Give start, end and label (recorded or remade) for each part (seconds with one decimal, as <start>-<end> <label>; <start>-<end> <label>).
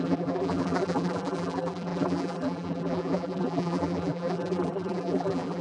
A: 0.0-5.6 remade